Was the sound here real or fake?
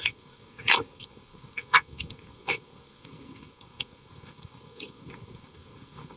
fake